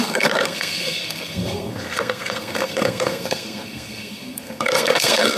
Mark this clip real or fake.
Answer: fake